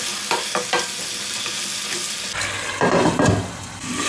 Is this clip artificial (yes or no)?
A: no